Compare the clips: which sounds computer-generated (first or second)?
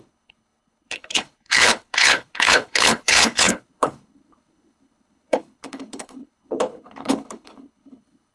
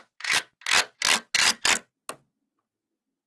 first